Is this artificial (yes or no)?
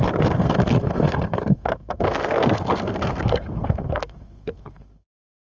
yes